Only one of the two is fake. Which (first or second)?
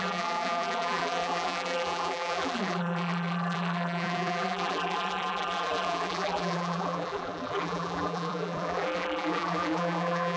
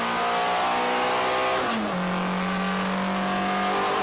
first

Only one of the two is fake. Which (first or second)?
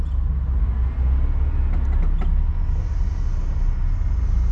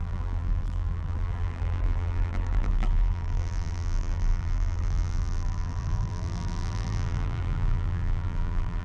second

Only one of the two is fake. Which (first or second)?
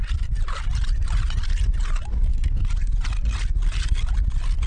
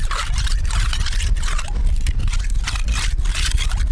second